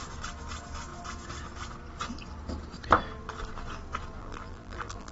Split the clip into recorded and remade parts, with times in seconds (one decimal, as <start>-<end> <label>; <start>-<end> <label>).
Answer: 0.0-4.2 recorded; 4.2-5.1 remade

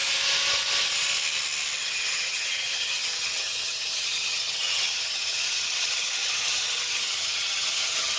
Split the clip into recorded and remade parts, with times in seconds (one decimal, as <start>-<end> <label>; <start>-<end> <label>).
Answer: 0.0-1.8 recorded; 1.8-8.2 remade